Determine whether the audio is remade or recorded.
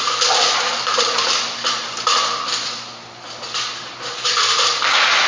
recorded